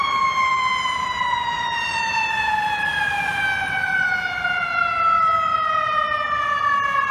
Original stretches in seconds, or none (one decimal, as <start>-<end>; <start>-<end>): 0.0-0.5; 3.4-5.5